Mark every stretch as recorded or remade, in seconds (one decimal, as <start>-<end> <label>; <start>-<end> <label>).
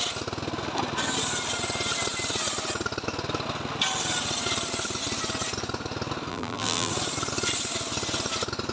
0.0-6.3 recorded; 6.3-6.9 remade; 6.9-8.7 recorded